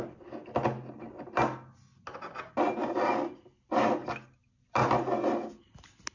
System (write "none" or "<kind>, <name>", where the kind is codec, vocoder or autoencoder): none